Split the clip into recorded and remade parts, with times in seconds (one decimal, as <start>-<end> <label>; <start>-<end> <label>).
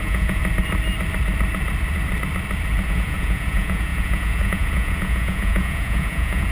0.0-0.4 remade; 0.4-2.9 recorded; 2.9-6.5 remade